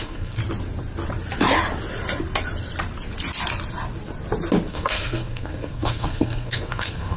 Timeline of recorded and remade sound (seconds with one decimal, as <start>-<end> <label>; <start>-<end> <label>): 0.0-0.4 remade; 0.4-4.7 recorded; 4.7-7.2 remade